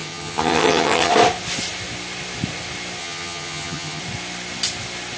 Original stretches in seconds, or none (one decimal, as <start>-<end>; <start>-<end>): 1.1-3.0; 4.0-5.2

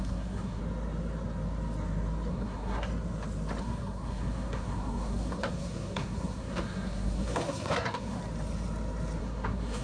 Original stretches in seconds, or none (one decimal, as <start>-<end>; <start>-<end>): 0.6-2.3; 2.9-3.6; 8.2-9.2